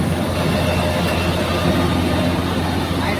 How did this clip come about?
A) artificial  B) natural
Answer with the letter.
B